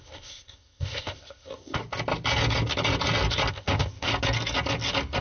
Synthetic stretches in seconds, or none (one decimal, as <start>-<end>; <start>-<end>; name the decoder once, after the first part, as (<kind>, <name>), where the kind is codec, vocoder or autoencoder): 0.0-1.8 (codec, ZipCodec); 3.5-4.1